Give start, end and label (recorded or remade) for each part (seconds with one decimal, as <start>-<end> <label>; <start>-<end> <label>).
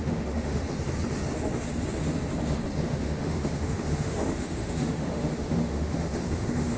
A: 0.0-0.6 remade; 0.6-2.9 recorded; 2.9-6.8 remade